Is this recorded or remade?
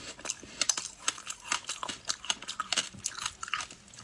recorded